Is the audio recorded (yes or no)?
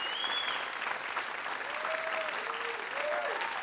yes